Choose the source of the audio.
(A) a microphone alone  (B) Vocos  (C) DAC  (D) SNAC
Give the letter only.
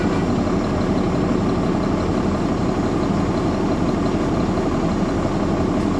A